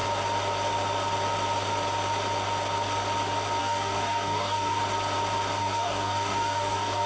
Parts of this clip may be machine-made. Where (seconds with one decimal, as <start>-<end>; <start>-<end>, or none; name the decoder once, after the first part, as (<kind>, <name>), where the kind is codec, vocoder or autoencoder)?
3.6-4.8 (codec, DAC); 5.6-7.1